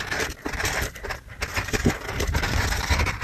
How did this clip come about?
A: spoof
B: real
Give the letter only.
B